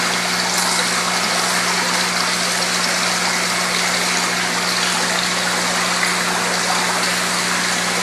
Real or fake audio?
real